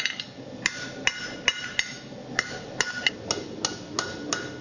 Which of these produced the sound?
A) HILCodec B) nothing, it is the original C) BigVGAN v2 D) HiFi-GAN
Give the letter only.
B